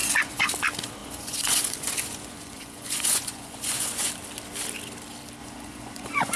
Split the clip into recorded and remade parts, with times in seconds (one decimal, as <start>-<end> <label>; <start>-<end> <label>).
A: 0.0-0.5 remade; 0.5-1.0 recorded; 1.0-4.1 remade; 4.1-5.4 recorded; 5.4-6.4 remade